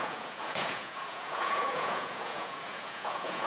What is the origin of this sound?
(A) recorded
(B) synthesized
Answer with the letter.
B